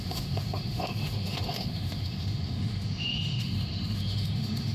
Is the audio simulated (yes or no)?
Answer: yes